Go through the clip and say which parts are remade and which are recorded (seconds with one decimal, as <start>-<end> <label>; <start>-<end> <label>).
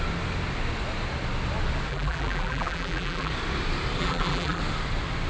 0.0-1.9 recorded; 1.9-3.3 remade; 3.3-4.0 recorded; 4.0-4.6 remade; 4.6-5.3 recorded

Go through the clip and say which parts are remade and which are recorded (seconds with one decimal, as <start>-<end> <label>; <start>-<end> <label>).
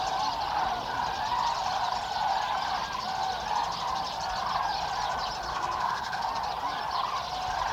0.0-5.5 recorded; 5.5-6.3 remade; 6.3-7.7 recorded